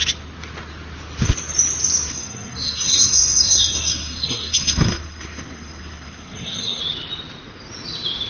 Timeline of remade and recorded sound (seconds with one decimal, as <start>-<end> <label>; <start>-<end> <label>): 0.0-2.1 recorded; 2.1-6.8 remade; 6.8-8.3 recorded